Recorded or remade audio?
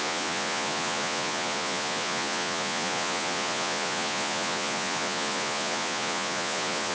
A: remade